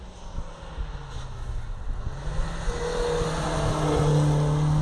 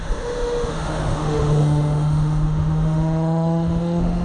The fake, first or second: second